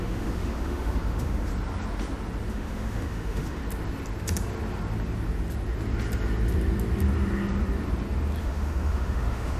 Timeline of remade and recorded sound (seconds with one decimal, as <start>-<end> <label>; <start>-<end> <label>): 0.0-1.5 remade; 1.5-2.5 recorded; 2.5-3.6 remade; 3.6-8.4 recorded; 8.4-9.6 remade